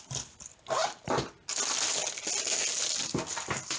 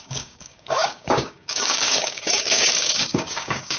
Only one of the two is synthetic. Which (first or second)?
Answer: second